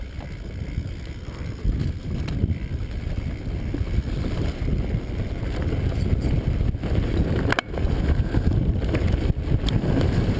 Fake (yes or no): yes